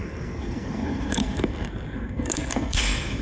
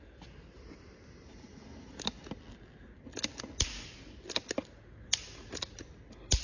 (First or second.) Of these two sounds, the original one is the second